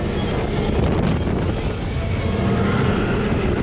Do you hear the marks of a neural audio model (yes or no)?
no